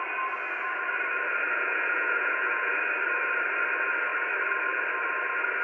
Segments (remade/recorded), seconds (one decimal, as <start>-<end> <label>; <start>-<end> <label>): 0.0-1.5 recorded; 1.5-2.7 remade; 2.7-5.6 recorded